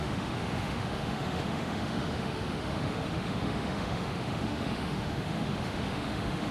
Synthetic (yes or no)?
yes